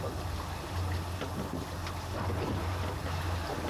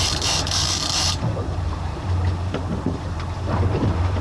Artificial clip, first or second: second